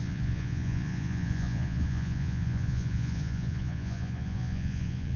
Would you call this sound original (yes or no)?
no